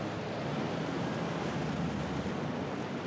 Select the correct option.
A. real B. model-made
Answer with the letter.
A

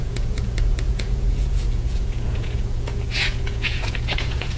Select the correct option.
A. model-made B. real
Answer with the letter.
A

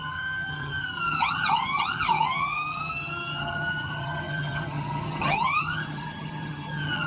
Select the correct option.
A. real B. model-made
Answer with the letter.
B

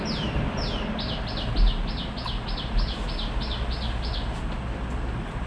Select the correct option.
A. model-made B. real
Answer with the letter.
B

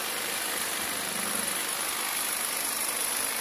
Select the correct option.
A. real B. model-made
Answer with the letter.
A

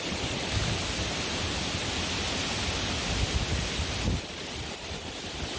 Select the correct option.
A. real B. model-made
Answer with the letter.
A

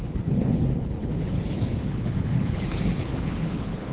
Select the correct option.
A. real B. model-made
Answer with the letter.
B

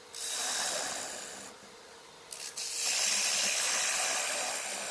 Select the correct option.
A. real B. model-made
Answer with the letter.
A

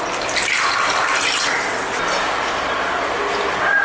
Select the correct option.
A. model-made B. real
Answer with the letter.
B